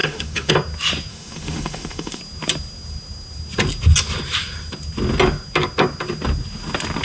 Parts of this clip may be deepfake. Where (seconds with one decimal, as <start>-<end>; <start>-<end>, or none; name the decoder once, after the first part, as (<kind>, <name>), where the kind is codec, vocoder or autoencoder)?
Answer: 0.0-0.5 (autoencoder, DAC-VAE); 1.1-2.2